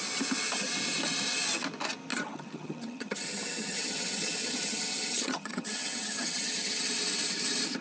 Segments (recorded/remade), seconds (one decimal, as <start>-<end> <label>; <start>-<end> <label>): 0.0-2.1 recorded; 2.1-6.8 remade; 6.8-7.8 recorded